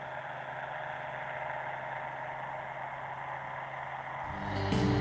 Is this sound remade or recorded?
recorded